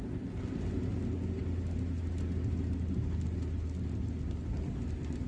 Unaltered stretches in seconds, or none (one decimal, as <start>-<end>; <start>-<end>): 0.0-5.3